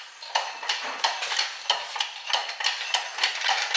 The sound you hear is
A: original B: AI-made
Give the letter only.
A